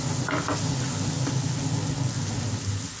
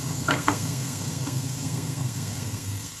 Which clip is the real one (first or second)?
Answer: first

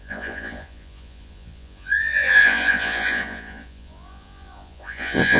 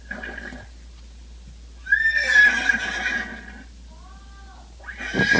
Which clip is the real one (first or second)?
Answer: second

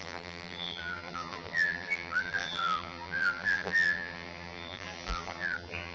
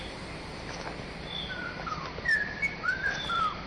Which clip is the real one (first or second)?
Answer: second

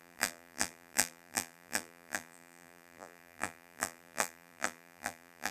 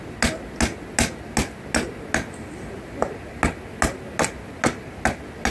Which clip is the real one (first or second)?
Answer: second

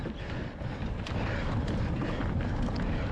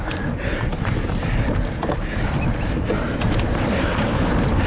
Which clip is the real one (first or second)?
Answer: first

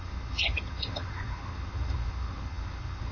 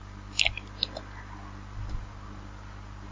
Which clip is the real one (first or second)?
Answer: second